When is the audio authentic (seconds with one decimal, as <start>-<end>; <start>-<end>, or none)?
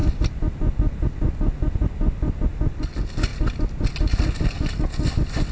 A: 0.0-5.5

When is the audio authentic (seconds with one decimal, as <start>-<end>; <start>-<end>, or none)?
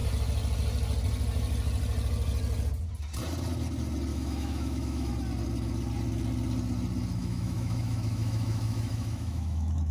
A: 0.0-4.1; 5.1-7.2